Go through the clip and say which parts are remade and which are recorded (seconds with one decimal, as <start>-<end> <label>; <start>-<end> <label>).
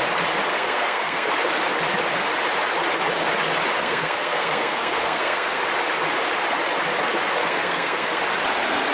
0.0-0.5 recorded; 0.5-1.3 remade; 1.3-3.8 recorded; 3.8-5.6 remade; 5.6-7.4 recorded; 7.4-8.2 remade; 8.2-8.9 recorded